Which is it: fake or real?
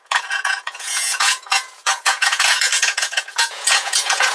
fake